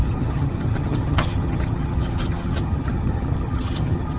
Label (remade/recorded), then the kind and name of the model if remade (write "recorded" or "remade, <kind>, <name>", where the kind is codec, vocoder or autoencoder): remade, vocoder, HiFi-GAN